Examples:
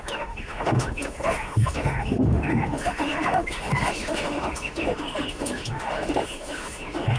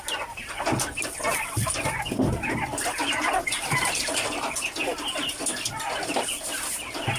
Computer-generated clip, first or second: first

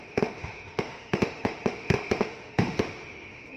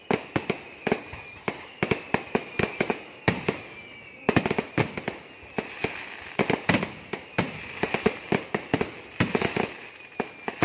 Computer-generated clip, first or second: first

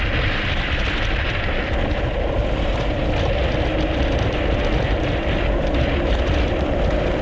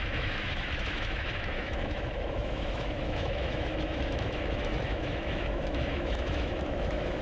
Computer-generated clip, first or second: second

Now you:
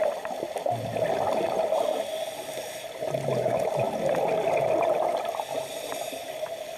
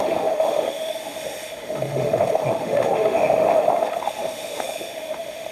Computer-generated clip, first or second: second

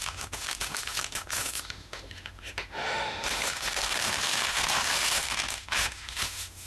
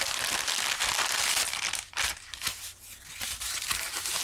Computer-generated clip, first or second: first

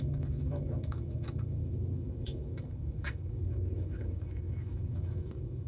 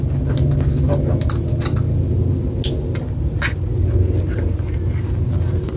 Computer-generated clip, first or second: first